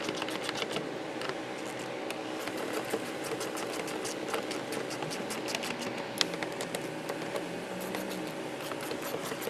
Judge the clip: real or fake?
real